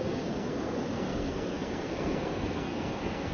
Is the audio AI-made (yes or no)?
yes